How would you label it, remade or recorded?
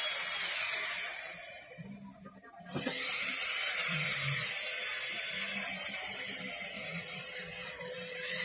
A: remade